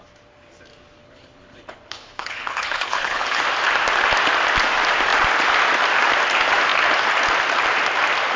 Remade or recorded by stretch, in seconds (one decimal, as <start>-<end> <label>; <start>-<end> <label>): 0.0-1.0 recorded; 1.0-3.4 remade; 3.4-8.4 recorded